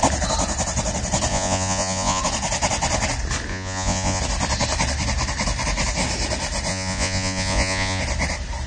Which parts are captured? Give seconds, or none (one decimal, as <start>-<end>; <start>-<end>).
0.0-1.3; 2.2-3.5; 4.2-6.7; 8.0-8.7